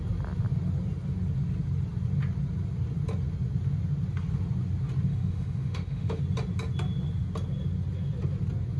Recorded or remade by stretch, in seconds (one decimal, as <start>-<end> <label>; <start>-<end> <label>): 0.0-5.1 recorded; 5.1-6.2 remade; 6.2-8.8 recorded